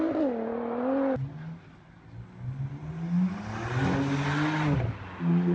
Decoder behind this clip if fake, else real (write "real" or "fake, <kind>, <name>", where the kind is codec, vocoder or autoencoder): real